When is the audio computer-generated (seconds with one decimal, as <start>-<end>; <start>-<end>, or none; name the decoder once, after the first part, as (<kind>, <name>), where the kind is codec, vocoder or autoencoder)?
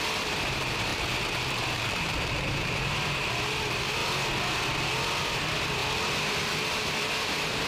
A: 0.0-4.0 (vocoder, BigVGAN v2); 5.2-5.8; 6.4-7.7